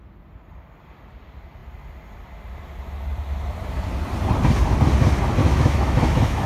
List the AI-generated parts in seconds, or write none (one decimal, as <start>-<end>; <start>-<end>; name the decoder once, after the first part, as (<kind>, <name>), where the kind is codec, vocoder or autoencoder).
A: 5.4-6.5 (autoencoder, DAC-VAE)